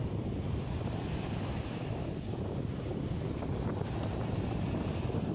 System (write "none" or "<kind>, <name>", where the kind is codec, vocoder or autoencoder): none